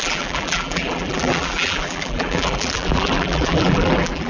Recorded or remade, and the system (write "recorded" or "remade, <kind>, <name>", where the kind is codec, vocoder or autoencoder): remade, vocoder, BigVGAN v2